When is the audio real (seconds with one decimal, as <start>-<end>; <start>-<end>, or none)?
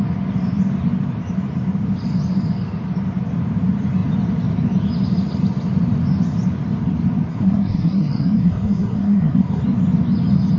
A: 0.0-7.3; 9.6-10.6